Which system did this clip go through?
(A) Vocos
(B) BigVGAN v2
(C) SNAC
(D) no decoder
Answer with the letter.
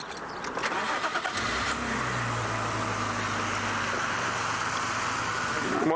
D